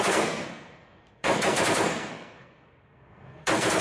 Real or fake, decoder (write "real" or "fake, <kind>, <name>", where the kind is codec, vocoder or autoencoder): fake, codec, SNAC